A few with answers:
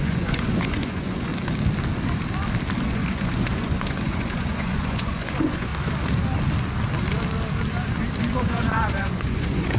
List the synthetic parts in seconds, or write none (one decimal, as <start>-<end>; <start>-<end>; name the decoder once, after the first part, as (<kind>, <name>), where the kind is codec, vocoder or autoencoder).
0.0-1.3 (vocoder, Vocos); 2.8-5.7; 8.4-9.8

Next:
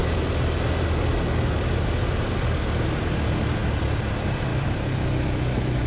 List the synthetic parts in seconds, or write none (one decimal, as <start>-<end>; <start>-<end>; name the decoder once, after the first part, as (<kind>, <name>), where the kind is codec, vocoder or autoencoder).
none

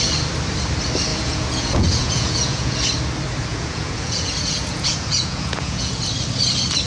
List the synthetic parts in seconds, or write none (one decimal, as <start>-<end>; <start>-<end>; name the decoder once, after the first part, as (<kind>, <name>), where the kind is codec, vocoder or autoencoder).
1.1-2.9 (vocoder, Vocos); 3.5-6.0

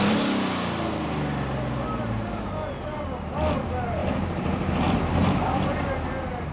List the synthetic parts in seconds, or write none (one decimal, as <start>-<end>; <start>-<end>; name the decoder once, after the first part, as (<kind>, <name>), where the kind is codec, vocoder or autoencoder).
none

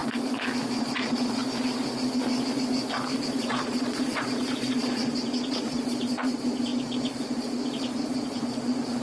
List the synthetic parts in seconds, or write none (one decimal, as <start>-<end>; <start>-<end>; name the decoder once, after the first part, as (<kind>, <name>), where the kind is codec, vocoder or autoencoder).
0.8-1.4 (vocoder, Vocos); 3.4-9.0

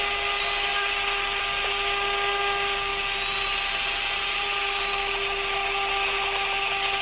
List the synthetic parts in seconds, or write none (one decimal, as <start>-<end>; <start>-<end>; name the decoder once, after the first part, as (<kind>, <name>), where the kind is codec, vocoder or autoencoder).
none

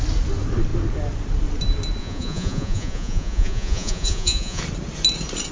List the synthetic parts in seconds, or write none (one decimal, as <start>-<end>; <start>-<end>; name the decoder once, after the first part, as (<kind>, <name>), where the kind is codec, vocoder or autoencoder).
2.0-4.6 (vocoder, Vocos)